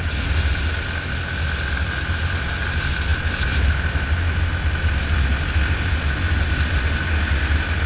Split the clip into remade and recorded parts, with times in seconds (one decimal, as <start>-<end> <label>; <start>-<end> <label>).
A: 0.0-7.9 recorded